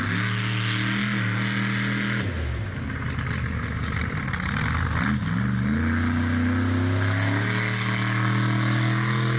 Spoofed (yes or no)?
no